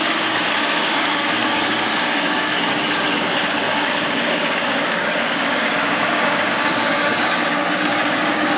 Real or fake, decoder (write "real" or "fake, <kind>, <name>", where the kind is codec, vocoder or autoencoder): fake, codec, DAC